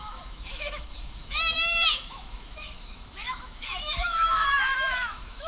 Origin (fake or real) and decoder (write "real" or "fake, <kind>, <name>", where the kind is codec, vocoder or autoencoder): fake, autoencoder, DAC-VAE